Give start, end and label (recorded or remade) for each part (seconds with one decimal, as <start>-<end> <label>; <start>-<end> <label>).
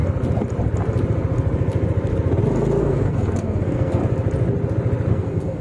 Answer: 0.0-2.8 recorded; 2.8-4.0 remade; 4.0-5.1 recorded; 5.1-5.6 remade